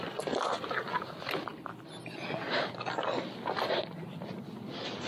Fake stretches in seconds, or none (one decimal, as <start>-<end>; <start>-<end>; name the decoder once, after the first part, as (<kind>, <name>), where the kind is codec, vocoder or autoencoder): none